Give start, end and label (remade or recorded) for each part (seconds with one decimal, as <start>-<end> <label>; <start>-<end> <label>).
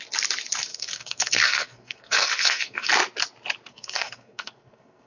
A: 0.0-0.7 recorded; 0.7-2.9 remade; 2.9-3.7 recorded; 3.7-5.1 remade